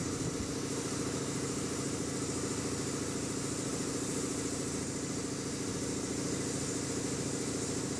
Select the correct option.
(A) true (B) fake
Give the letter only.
A